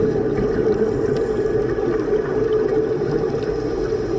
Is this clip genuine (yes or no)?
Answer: yes